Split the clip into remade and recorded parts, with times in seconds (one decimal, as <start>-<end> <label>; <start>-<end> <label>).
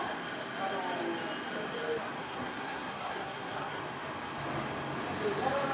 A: 0.0-2.2 recorded; 2.2-3.8 remade; 3.8-5.7 recorded